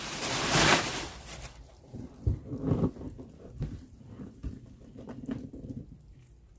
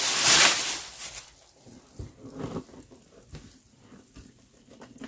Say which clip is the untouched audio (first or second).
second